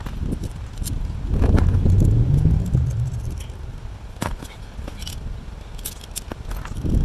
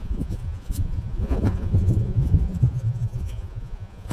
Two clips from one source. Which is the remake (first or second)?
second